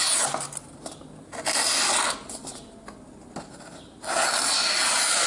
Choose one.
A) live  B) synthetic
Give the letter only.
A